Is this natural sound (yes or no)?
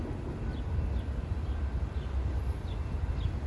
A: yes